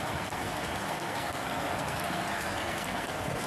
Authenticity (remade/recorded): remade